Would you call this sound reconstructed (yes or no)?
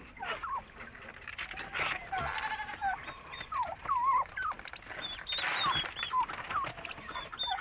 no